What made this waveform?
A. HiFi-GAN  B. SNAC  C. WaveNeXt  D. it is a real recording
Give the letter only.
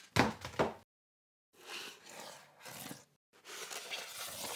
D